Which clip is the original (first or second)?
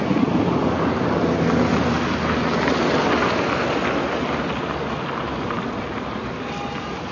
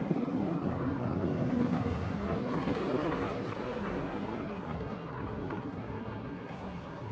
first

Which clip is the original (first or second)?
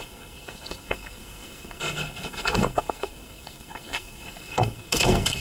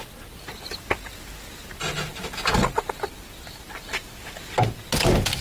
second